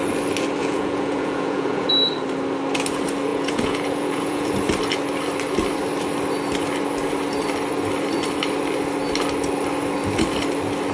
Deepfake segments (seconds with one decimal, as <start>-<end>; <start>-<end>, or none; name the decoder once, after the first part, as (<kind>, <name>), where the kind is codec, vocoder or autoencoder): 0.6-1.9 (vocoder, Vocos); 3.3-4.5